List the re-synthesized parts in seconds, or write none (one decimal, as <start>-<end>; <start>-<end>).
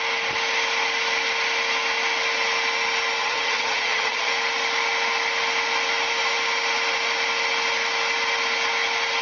3.2-4.3